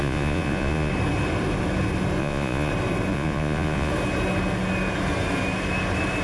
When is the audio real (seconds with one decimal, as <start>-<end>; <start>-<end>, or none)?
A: 0.9-2.2; 2.7-3.1; 3.9-6.2